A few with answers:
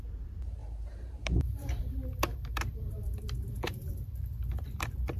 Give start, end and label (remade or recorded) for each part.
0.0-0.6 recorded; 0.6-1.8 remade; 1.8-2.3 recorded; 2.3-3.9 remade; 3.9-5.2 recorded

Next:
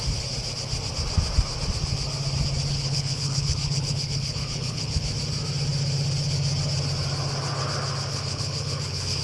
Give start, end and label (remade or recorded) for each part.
0.0-2.7 recorded; 2.7-5.1 remade; 5.1-8.1 recorded; 8.1-9.2 remade